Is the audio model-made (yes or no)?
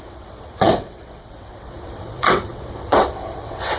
yes